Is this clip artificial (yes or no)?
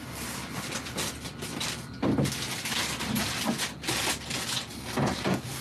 no